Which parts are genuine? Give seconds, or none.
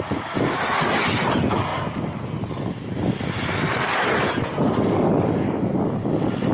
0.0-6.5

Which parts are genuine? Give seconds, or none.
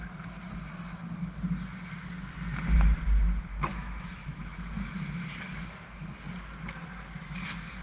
0.0-3.5; 5.2-7.8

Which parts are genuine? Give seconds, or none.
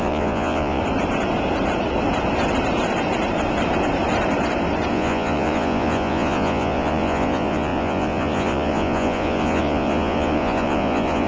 0.8-4.9